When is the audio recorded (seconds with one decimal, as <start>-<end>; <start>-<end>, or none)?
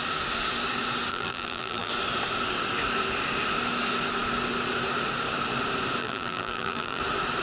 0.0-1.1; 1.9-6.0; 7.0-7.4